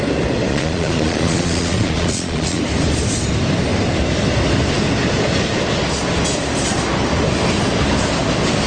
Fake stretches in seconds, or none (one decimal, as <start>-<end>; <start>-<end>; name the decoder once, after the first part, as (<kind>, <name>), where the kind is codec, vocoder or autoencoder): 0.5-2.6 (vocoder, Vocos)